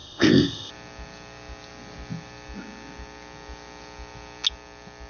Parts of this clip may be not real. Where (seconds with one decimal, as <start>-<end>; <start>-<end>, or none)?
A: 0.0-0.7